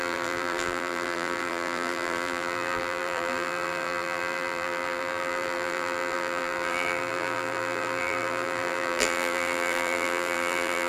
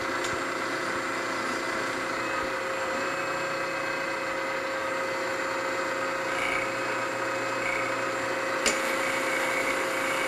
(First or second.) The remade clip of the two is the first